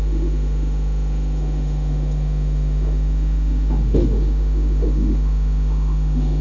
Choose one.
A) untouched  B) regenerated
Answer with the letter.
B